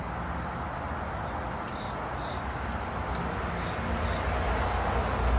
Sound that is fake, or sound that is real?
real